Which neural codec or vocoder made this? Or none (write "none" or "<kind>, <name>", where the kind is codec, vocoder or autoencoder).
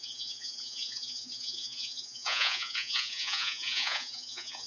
vocoder, Vocos